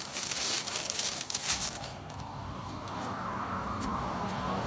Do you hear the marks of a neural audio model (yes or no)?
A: yes